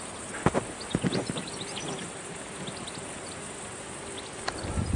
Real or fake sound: real